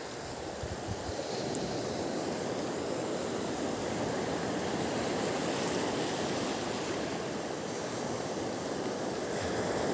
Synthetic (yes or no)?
no